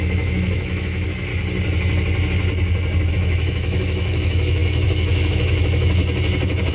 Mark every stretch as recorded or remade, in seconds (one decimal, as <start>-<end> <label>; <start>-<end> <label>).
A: 0.0-1.3 remade; 1.3-3.1 recorded; 3.1-6.0 remade; 6.0-6.7 recorded